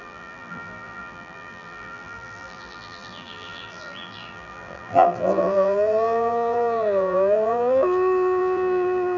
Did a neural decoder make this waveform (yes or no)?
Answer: yes